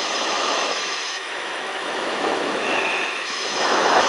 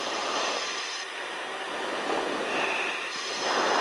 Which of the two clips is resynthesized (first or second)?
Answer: first